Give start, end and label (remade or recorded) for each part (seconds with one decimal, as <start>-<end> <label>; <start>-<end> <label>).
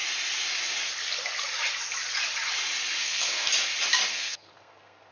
0.0-3.0 recorded; 3.0-3.5 remade; 3.5-4.1 recorded; 4.1-5.1 remade